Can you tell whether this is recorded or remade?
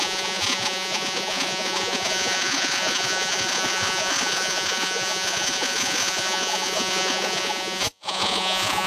remade